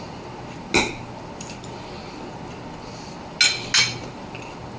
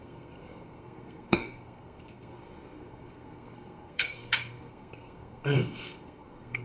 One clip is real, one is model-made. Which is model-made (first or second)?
second